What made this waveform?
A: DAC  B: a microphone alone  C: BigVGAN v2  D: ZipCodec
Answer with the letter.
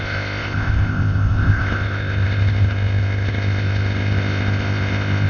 D